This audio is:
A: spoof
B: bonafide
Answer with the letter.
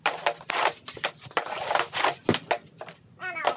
B